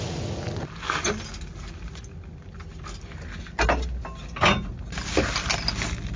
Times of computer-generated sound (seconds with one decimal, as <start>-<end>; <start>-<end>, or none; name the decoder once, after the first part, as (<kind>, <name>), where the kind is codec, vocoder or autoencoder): none